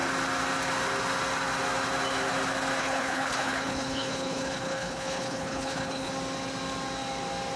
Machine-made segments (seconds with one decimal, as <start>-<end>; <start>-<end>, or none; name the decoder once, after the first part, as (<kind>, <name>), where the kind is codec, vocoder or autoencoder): 2.8-6.1 (codec, HILCodec)